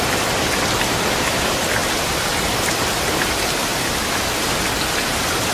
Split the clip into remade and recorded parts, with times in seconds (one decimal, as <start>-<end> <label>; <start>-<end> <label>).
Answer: 0.0-3.7 recorded; 3.7-4.3 remade; 4.3-5.5 recorded